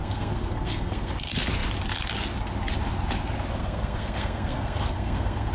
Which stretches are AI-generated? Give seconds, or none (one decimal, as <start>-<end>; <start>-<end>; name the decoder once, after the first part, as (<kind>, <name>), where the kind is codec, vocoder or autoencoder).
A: 0.0-1.1 (codec, SNAC); 3.6-5.5